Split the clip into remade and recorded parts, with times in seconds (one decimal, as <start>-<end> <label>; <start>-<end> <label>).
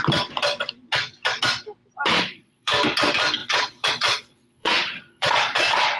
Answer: 0.0-2.1 recorded; 2.1-2.7 remade; 2.7-3.4 recorded; 3.4-5.6 remade; 5.6-6.0 recorded